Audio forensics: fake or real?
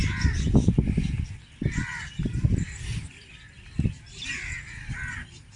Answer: real